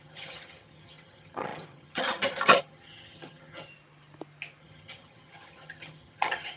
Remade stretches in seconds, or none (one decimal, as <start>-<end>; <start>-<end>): 0.0-3.7; 4.6-6.6

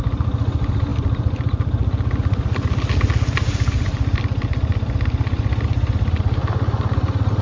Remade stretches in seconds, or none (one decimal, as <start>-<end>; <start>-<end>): none

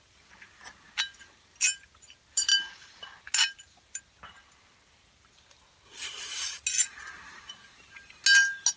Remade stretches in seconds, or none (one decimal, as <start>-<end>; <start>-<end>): none